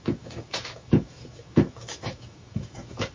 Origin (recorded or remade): remade